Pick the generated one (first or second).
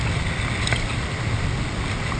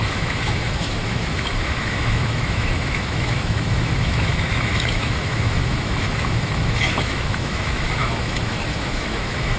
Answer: second